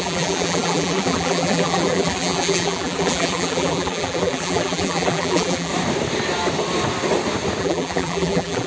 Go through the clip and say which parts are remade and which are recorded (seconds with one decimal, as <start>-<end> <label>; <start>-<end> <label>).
0.0-5.7 remade; 5.7-7.6 recorded; 7.6-8.7 remade